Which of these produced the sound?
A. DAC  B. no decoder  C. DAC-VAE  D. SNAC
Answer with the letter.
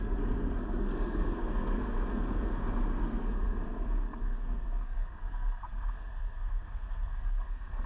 D